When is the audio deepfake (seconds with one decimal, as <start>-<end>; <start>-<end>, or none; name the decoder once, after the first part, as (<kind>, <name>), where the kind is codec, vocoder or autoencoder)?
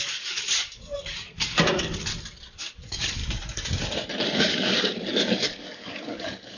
0.0-2.1 (codec, DAC); 2.6-3.2; 4.2-6.6